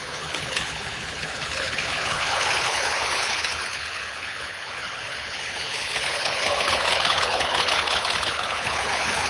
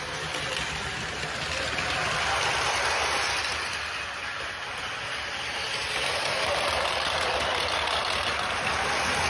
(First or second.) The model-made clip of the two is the first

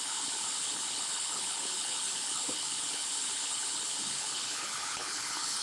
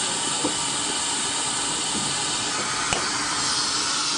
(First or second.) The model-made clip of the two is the first